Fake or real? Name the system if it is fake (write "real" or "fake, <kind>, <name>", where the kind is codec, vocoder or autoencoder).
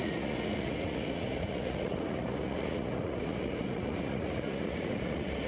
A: fake, vocoder, Vocos